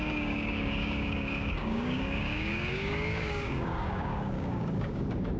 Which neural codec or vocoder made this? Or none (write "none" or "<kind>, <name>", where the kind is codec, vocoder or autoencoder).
codec, DAC